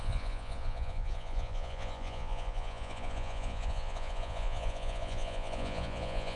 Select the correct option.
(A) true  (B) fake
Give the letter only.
B